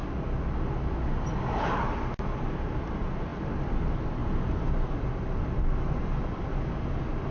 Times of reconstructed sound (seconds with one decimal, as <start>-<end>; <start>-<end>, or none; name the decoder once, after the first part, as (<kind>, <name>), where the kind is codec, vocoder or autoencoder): none